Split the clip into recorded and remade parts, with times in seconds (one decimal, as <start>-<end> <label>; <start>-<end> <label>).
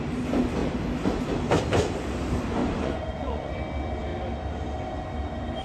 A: 0.0-2.6 recorded; 2.6-3.5 remade; 3.5-5.6 recorded